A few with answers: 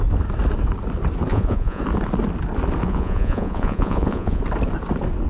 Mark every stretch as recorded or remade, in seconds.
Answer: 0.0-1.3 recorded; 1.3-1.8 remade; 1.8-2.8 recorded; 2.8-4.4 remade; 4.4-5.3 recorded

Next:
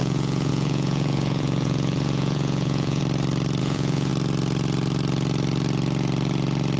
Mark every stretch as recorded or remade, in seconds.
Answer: 0.0-3.0 remade; 3.0-3.6 recorded; 3.6-4.1 remade; 4.1-6.8 recorded

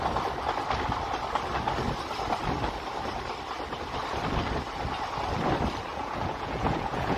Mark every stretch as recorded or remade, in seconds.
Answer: 0.0-5.9 recorded; 5.9-7.2 remade

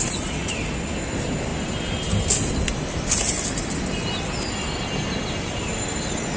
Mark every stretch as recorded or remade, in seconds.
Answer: 0.0-6.4 recorded

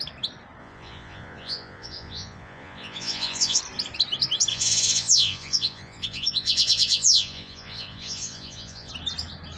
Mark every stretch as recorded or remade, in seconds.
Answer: 0.0-0.6 recorded; 0.6-3.6 remade; 3.6-4.5 recorded; 4.5-8.9 remade; 8.9-9.6 recorded